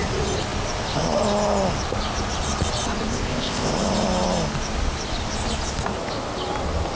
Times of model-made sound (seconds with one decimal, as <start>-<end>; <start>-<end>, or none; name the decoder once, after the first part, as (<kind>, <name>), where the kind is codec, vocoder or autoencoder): 3.1-3.7 (codec, ZipCodec)

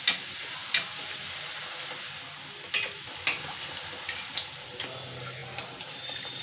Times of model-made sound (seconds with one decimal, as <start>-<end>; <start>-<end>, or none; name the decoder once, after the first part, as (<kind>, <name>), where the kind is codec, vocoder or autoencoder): none

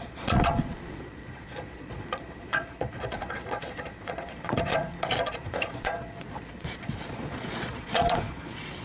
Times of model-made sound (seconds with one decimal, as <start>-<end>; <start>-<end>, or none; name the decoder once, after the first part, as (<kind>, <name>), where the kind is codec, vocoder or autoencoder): 0.0-8.8 (vocoder, Vocos)

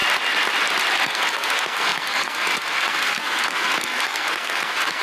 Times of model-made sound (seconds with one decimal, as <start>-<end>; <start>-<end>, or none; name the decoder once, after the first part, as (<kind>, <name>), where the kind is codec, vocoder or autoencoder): 1.0-5.0 (codec, SNAC)

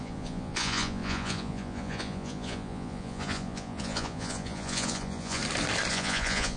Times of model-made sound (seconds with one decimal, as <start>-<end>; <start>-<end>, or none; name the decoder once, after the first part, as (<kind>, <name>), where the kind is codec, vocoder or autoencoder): 0.0-5.4 (vocoder, Vocos); 5.9-6.6

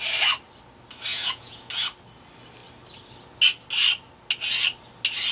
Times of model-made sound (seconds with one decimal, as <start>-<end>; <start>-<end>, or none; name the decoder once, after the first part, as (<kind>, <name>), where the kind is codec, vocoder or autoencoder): 1.1-1.7 (vocoder, Vocos)

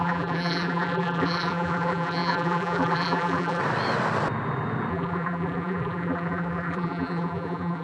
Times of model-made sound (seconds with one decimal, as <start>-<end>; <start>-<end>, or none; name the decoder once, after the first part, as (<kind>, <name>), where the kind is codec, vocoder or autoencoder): 0.0-3.6 (vocoder, BigVGAN v2); 4.9-7.8